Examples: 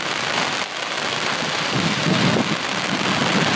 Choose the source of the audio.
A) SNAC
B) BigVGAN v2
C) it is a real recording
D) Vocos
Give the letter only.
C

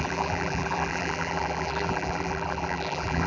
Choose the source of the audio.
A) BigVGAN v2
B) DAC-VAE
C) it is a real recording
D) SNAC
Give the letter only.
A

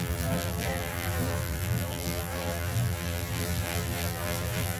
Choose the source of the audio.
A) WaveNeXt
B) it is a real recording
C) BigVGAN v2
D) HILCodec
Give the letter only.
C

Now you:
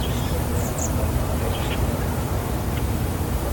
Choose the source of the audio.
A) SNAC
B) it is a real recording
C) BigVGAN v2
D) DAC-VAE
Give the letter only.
C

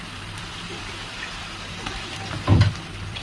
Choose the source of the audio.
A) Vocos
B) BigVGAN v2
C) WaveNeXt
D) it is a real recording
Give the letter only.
B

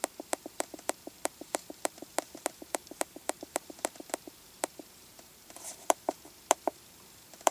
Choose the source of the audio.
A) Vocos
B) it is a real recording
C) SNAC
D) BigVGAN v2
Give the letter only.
D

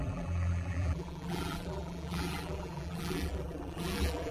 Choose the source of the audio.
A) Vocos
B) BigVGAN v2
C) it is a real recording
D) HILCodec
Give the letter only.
B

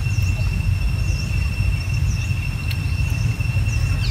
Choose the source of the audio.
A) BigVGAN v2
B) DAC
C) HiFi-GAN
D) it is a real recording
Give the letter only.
D